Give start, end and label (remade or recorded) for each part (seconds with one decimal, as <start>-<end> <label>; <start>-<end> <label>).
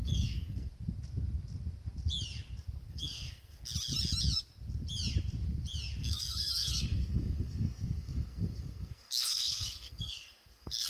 0.0-0.7 remade; 0.7-2.9 recorded; 2.9-3.7 remade; 3.7-6.0 recorded; 6.0-10.9 remade